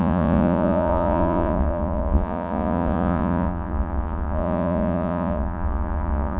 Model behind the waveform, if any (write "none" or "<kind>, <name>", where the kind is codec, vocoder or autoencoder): vocoder, Vocos